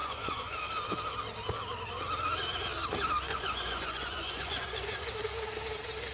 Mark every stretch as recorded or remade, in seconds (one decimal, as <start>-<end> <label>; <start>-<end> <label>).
0.0-0.6 remade; 0.6-3.3 recorded; 3.3-5.1 remade; 5.1-6.1 recorded